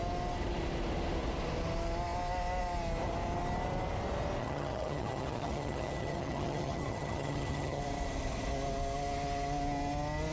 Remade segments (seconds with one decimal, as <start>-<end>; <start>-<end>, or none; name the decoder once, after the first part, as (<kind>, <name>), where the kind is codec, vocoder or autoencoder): 4.4-7.8 (vocoder, HiFi-GAN)